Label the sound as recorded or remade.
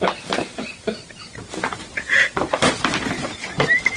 recorded